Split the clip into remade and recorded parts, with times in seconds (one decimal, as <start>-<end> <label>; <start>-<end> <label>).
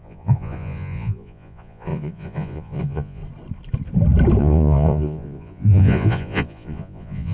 0.0-3.2 remade; 3.2-4.4 recorded; 4.4-7.3 remade